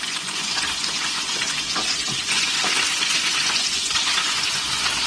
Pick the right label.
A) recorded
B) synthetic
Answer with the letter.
B